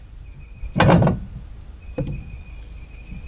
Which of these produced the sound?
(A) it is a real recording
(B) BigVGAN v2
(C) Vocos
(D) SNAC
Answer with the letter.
A